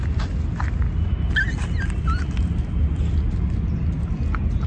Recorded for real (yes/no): yes